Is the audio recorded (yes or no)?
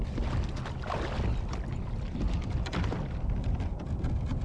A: yes